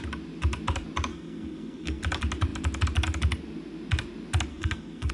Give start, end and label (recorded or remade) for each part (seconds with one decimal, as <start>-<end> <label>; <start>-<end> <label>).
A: 0.0-1.1 recorded; 1.1-2.0 remade; 2.0-4.5 recorded; 4.5-5.1 remade